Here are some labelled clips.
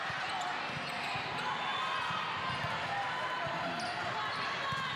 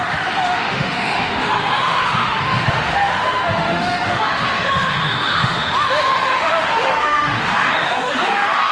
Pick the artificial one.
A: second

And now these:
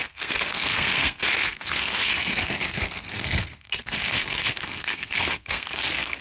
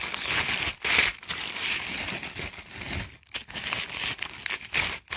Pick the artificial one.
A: first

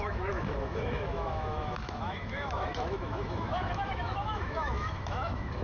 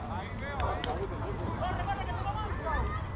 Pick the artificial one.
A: first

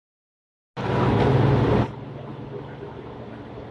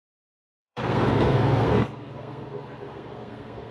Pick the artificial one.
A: second